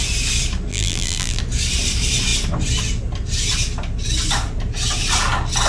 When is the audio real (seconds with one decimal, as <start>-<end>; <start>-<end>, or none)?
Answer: 0.0-0.7; 1.4-5.7